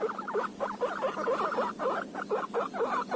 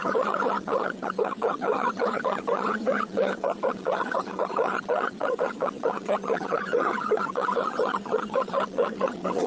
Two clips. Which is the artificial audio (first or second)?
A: second